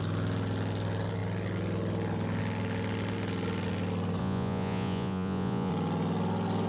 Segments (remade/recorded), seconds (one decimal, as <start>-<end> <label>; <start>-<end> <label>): 0.0-4.2 recorded; 4.2-5.7 remade; 5.7-6.7 recorded